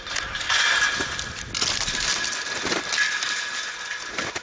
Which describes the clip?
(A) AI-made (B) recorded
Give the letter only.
B